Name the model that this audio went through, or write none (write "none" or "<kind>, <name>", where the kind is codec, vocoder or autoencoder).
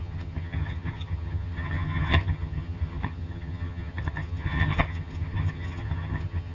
vocoder, HiFi-GAN